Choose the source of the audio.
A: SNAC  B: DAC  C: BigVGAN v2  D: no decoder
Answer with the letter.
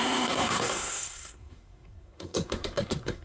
A